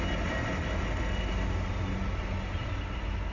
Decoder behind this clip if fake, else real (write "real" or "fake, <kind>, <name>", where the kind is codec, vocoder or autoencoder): real